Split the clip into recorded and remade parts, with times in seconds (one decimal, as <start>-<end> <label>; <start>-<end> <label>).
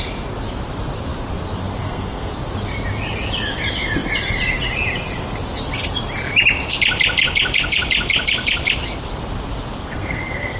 0.0-1.8 recorded; 1.8-2.3 remade; 2.3-9.8 recorded; 9.8-10.6 remade